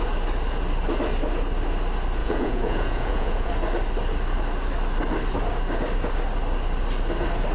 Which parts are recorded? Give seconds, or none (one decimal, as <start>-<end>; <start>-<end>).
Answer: 0.0-2.2; 3.5-7.5